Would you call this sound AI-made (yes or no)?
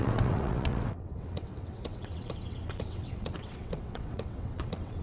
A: yes